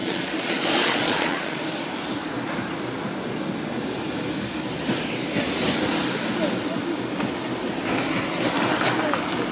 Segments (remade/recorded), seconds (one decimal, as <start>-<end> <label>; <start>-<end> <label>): 0.0-1.6 remade; 1.6-9.5 recorded